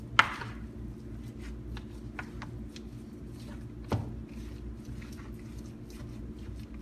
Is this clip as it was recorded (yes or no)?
yes